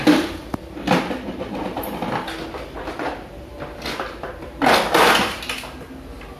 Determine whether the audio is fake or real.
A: real